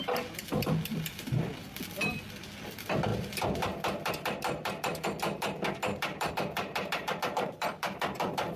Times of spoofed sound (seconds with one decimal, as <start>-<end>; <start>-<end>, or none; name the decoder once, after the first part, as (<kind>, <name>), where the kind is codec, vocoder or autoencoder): 6.7-8.6 (vocoder, BigVGAN v2)